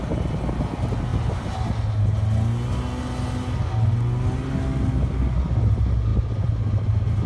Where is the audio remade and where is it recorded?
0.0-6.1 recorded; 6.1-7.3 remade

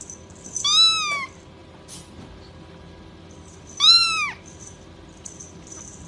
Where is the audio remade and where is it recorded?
0.0-1.6 recorded; 1.6-5.3 remade; 5.3-6.1 recorded

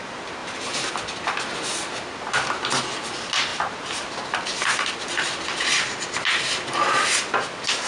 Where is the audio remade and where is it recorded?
0.0-0.4 recorded; 0.4-0.9 remade; 0.9-7.9 recorded

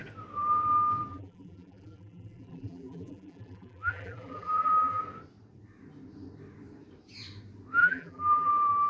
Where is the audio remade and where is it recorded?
0.0-1.1 recorded; 1.1-5.0 remade; 5.0-7.8 recorded; 7.8-8.5 remade; 8.5-8.9 recorded

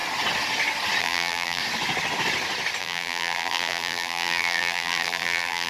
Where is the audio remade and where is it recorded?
0.0-1.0 recorded; 1.0-1.6 remade; 1.6-2.8 recorded; 2.8-5.7 remade

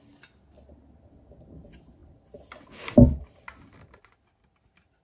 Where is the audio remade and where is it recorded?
0.0-5.0 recorded